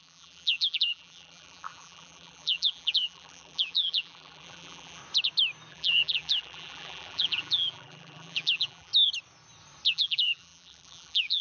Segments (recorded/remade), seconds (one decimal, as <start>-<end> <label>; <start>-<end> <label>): 0.0-5.0 remade; 5.0-5.7 recorded; 5.7-8.9 remade; 8.9-9.9 recorded; 9.9-11.4 remade